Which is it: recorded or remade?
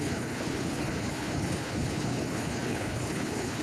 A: remade